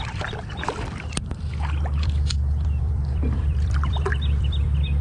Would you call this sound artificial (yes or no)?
yes